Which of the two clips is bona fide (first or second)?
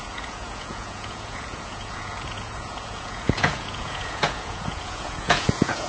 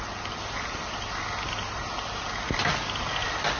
second